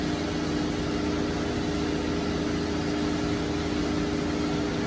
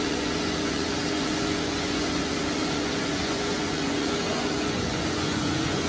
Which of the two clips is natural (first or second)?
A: first